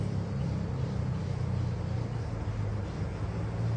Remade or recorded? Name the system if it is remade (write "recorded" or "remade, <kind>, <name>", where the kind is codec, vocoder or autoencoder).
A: recorded